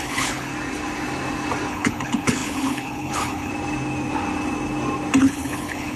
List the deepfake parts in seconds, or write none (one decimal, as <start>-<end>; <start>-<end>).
0.0-0.5; 1.7-3.5; 5.2-6.0